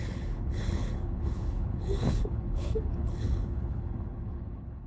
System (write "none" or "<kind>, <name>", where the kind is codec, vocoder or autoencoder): codec, HILCodec